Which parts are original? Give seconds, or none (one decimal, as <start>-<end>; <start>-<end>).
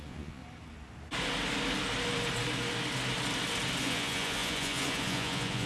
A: 0.4-3.8